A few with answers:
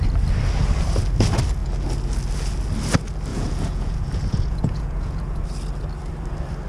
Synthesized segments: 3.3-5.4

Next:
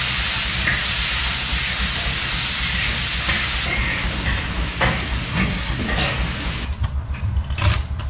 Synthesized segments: 5.3-5.8